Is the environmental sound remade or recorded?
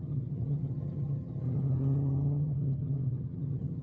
remade